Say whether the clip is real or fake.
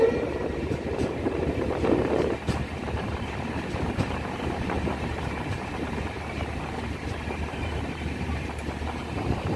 fake